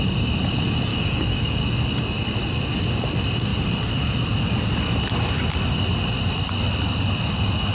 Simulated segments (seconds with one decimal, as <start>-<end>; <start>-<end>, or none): 0.9-1.6